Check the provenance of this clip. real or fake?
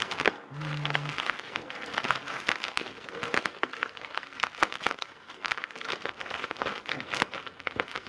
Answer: fake